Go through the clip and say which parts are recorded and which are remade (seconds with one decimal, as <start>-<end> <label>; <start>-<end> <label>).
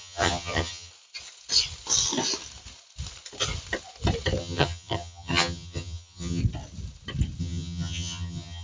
0.0-0.9 remade; 0.9-4.4 recorded; 4.4-6.4 remade; 6.4-7.4 recorded; 7.4-8.6 remade